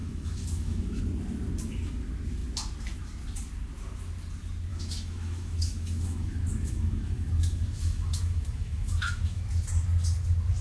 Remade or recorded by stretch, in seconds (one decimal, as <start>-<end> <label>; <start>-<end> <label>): 0.0-1.0 remade; 1.0-4.7 recorded; 4.7-9.5 remade; 9.5-10.6 recorded